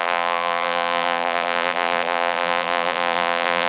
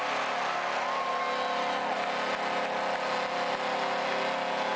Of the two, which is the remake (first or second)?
first